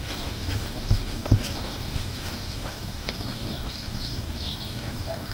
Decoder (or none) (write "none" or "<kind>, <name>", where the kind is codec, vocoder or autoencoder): codec, DAC